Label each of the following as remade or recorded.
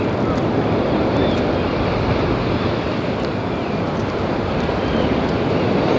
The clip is recorded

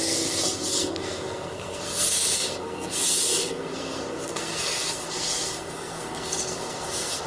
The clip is remade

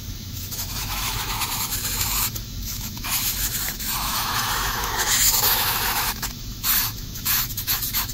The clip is remade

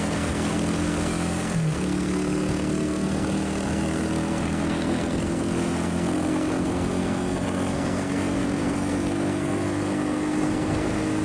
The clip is remade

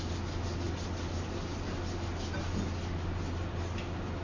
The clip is recorded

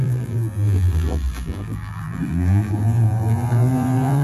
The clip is remade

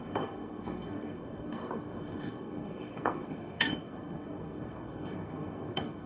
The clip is remade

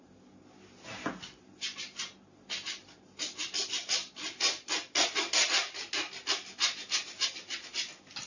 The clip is recorded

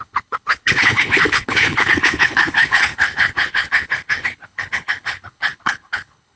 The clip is remade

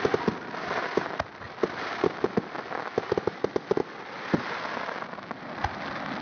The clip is recorded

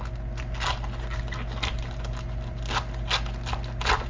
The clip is recorded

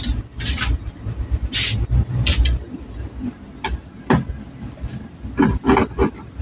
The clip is recorded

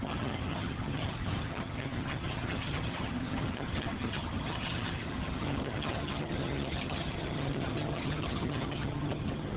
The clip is remade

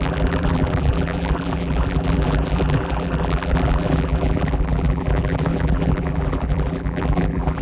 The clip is remade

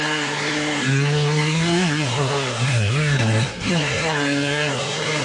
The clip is remade